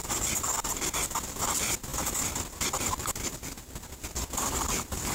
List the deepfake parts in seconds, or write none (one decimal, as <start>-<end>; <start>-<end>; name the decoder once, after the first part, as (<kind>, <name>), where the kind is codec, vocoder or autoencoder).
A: 0.0-1.4 (vocoder, BigVGAN v2); 1.9-5.1